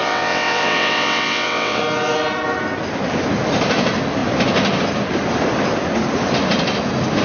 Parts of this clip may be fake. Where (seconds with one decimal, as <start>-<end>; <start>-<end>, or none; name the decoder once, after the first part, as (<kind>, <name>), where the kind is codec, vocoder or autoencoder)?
0.0-1.8 (vocoder, WaveNeXt)